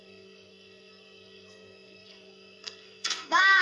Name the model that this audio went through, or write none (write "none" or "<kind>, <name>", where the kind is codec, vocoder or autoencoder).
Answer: codec, SNAC